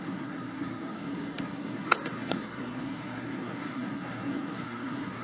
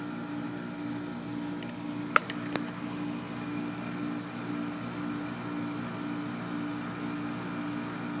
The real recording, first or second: second